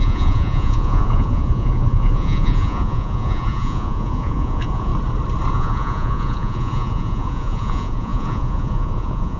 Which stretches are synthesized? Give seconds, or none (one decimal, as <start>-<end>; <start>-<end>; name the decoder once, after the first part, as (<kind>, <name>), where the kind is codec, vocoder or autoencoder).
0.0-4.9 (vocoder, Vocos); 5.5-9.4